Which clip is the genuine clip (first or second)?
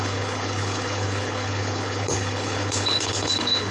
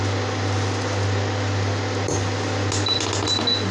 second